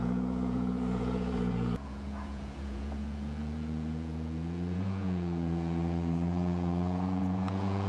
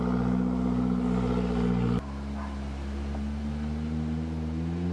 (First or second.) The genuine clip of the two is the second